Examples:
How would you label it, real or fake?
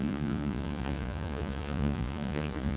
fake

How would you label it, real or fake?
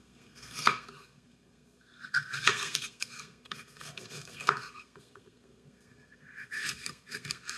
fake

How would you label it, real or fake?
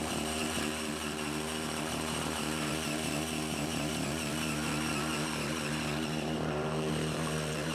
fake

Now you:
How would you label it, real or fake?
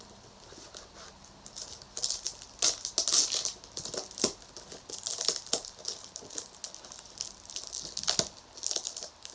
real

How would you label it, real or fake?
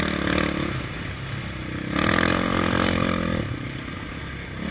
real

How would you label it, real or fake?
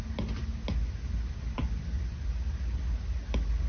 real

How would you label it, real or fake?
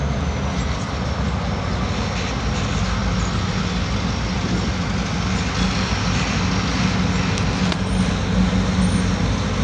real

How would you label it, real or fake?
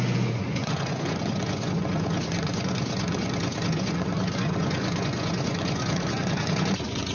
fake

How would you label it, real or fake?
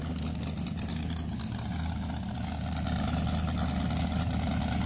real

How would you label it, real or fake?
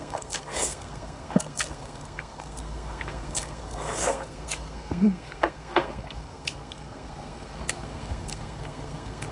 fake